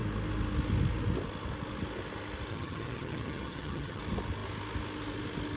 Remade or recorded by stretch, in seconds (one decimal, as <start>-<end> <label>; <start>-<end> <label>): 0.0-2.5 recorded; 2.5-4.0 remade; 4.0-5.6 recorded